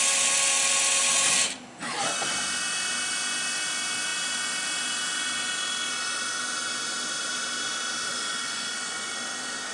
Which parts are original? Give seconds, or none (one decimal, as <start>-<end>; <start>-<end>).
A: 0.0-8.1; 9.1-9.7

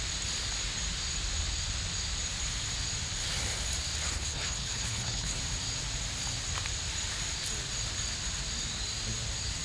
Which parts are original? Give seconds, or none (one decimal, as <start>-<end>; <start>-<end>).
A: 0.0-4.0; 5.4-9.6

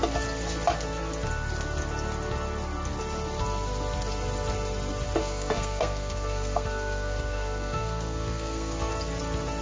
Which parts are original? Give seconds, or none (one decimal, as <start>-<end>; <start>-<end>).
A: 0.0-5.2; 8.9-9.6

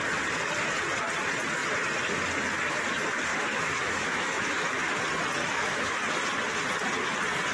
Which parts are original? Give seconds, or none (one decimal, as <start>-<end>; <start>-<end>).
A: 0.0-3.3; 5.0-5.4; 6.0-7.5

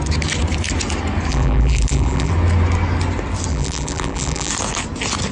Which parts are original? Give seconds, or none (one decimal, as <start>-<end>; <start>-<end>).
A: 0.0-1.3; 2.3-3.5; 4.5-5.3

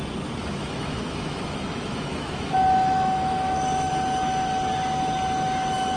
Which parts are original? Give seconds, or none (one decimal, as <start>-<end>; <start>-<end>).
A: 0.0-0.6; 3.9-6.0

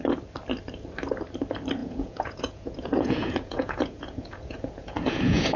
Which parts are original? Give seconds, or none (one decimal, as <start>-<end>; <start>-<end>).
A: 0.0-1.8